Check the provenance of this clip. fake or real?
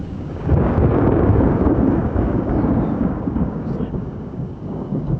fake